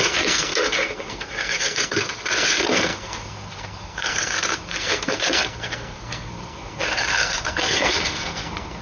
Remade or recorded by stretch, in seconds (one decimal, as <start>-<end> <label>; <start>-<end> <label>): 0.0-8.8 remade